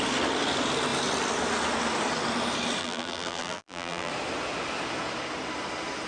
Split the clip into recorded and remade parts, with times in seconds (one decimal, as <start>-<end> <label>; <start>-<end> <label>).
0.0-2.8 recorded; 2.8-4.1 remade; 4.1-6.1 recorded